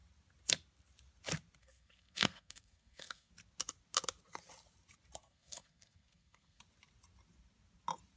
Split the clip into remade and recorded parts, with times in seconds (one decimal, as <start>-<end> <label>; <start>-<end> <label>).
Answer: 0.0-1.6 recorded; 1.6-3.3 remade; 3.3-5.2 recorded; 5.2-6.6 remade; 6.6-8.2 recorded